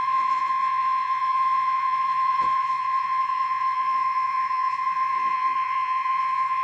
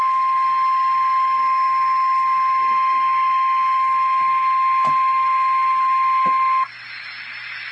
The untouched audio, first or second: second